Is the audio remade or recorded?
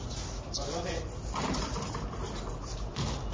recorded